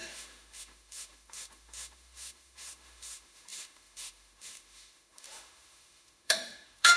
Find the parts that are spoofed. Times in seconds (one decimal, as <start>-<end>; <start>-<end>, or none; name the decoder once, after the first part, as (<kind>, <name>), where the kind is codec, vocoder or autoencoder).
0.0-7.0 (autoencoder, DAC-VAE)